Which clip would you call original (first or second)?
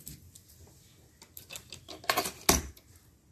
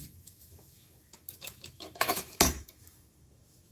first